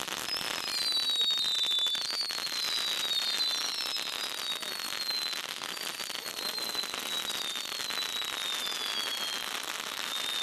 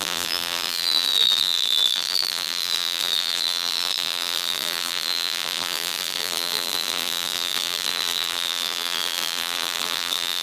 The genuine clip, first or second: first